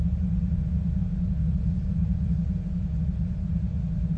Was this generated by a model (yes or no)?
no